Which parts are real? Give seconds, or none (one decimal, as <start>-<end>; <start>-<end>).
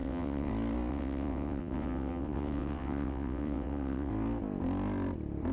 0.5-0.9; 4.1-5.5